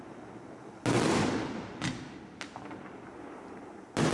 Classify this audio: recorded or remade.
recorded